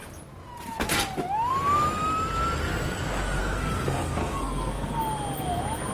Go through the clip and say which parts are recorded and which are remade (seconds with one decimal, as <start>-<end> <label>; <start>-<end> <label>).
0.0-3.4 recorded; 3.4-5.0 remade; 5.0-5.9 recorded